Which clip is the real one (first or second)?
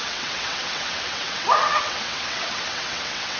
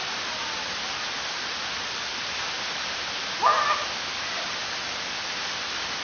second